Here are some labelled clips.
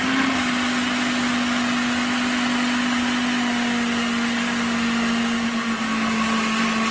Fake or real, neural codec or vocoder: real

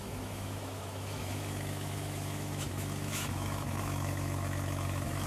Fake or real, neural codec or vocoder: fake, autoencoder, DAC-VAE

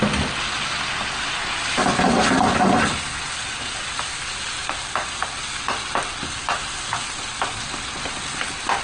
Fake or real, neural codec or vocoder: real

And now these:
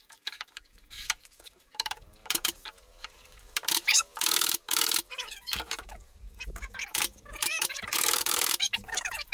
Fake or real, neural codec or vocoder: fake, codec, DAC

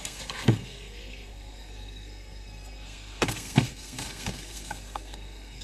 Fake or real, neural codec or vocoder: fake, codec, SNAC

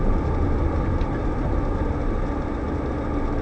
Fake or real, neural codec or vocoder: real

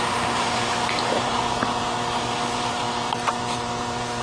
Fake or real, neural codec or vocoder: fake, vocoder, BigVGAN v2